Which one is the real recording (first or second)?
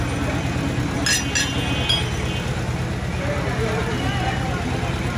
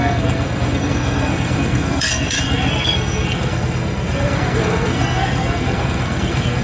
first